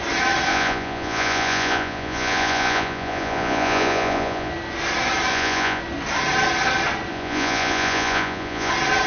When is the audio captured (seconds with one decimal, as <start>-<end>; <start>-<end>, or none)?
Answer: 0.0-0.5; 4.5-5.3; 5.8-7.1; 8.7-9.1